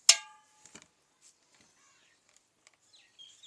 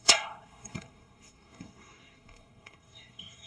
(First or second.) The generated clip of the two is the second